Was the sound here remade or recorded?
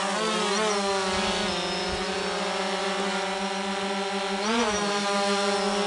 recorded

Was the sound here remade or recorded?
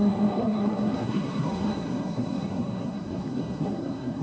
remade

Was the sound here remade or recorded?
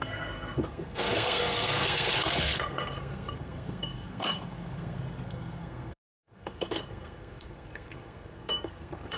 remade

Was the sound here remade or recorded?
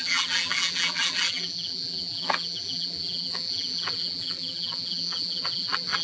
remade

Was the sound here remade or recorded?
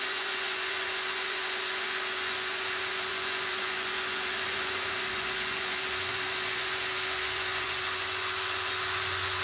remade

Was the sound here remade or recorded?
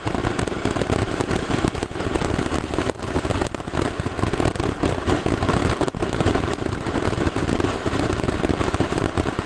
remade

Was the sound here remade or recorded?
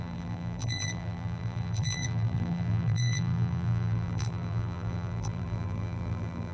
remade